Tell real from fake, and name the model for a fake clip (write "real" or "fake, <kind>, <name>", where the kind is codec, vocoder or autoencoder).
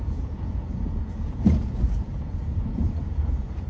fake, vocoder, Vocos